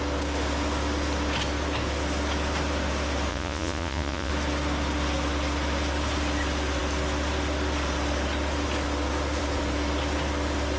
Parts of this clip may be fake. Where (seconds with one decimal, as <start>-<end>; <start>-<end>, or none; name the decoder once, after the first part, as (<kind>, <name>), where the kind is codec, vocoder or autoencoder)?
3.3-4.3 (vocoder, Vocos)